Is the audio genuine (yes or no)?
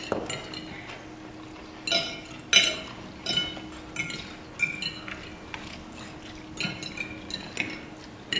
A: yes